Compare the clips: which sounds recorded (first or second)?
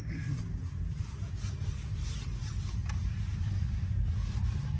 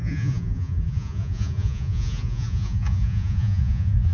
first